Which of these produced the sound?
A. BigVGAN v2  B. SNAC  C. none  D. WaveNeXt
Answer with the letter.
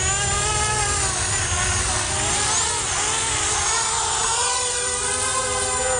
C